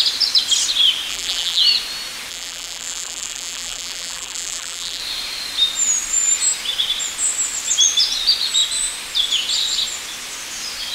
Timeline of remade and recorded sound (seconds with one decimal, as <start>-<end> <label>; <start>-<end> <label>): 0.0-1.1 recorded; 1.1-1.6 remade; 1.6-2.3 recorded; 2.3-5.0 remade; 5.0-10.9 recorded